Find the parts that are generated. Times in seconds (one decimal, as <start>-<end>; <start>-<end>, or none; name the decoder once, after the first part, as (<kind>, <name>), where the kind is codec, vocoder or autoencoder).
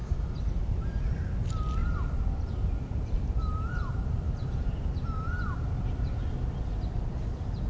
0.0-0.6 (vocoder, BigVGAN v2); 1.8-5.9